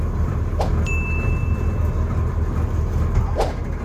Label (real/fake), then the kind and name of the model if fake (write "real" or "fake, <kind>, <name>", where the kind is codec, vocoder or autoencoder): real